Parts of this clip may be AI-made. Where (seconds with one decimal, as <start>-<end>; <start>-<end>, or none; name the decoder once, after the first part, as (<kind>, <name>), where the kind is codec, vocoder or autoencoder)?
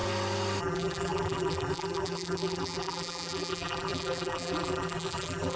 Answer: 0.6-5.6 (vocoder, BigVGAN v2)